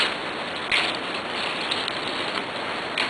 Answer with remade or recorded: recorded